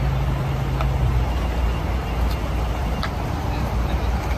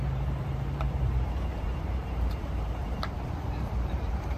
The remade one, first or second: second